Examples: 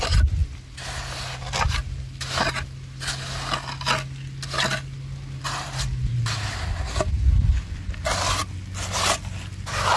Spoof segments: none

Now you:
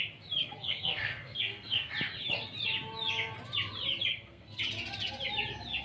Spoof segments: 0.4-1.9 (codec, SNAC); 4.1-4.6

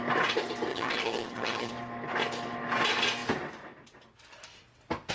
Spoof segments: 0.7-1.7 (vocoder, HiFi-GAN)

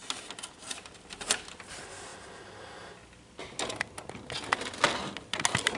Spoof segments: none

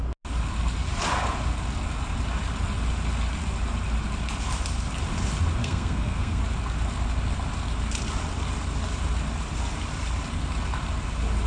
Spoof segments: 5.6-6.4 (codec, SNAC)

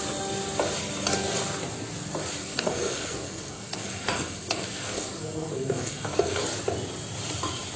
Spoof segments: 2.4-6.4 (codec, SNAC)